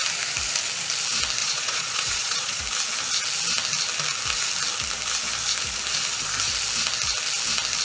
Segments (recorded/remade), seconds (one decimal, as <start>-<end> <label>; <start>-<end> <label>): 0.0-1.4 recorded; 1.4-2.6 remade; 2.6-7.8 recorded